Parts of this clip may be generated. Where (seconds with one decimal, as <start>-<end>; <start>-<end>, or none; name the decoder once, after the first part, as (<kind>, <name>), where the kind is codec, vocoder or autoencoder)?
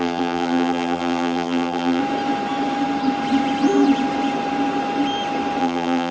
0.0-2.0 (vocoder, BigVGAN v2); 5.6-6.1